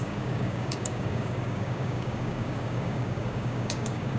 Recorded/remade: remade